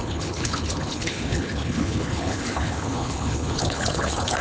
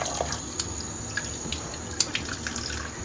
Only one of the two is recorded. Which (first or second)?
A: second